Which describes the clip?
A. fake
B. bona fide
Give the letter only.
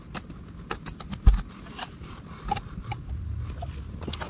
B